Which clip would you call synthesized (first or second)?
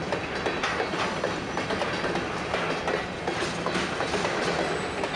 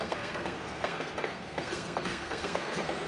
second